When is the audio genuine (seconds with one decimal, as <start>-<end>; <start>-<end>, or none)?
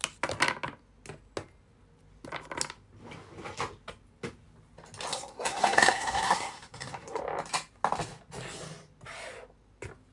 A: 0.0-5.1; 7.2-10.1